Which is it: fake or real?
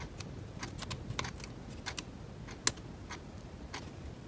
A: real